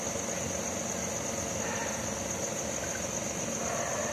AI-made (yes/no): no